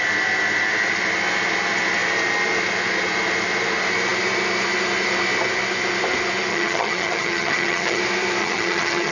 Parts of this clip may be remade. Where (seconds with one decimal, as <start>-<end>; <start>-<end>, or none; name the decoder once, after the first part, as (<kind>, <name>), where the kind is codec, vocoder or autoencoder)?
6.5-8.0 (vocoder, HiFi-GAN); 8.4-9.1